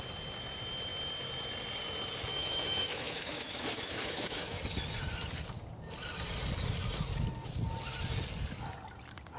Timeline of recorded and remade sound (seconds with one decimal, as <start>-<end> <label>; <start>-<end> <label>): 0.0-2.3 recorded; 2.3-4.6 remade; 4.6-9.4 recorded

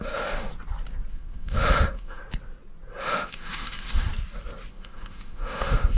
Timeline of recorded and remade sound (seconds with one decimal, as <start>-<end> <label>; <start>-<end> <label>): 0.0-0.5 remade; 0.5-1.1 recorded; 1.1-2.2 remade; 2.2-3.0 recorded; 3.0-4.1 remade; 4.1-4.7 recorded; 4.7-6.0 remade

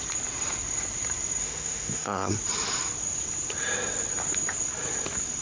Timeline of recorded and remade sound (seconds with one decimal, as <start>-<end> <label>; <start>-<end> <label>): 0.0-1.4 recorded; 1.4-2.3 remade; 2.3-5.4 recorded

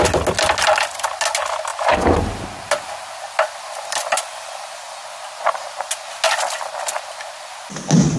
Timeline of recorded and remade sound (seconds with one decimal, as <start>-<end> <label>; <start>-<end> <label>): 0.0-8.2 recorded